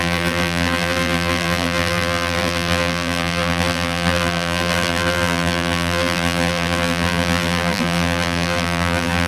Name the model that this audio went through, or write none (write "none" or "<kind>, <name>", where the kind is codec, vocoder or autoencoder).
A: vocoder, BigVGAN v2